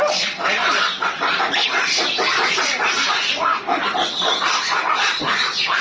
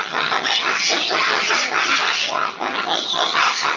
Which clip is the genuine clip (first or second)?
first